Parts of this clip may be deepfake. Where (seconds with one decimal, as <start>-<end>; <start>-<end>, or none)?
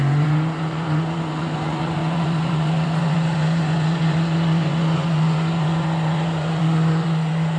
0.0-7.6